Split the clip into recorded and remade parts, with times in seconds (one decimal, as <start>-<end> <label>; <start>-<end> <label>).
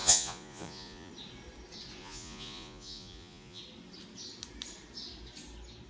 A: 0.0-1.1 remade; 1.1-2.0 recorded; 2.0-3.6 remade; 3.6-5.9 recorded